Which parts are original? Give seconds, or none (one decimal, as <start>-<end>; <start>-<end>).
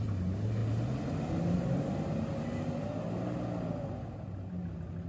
0.0-5.1